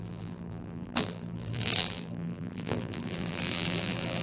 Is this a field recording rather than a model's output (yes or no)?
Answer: no